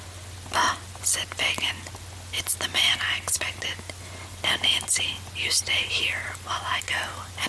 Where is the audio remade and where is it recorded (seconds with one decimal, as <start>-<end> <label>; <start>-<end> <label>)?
0.0-7.5 recorded

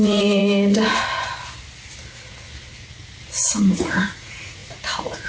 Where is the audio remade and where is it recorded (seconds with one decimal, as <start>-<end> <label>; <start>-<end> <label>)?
0.0-0.4 remade; 0.4-3.6 recorded; 3.6-5.3 remade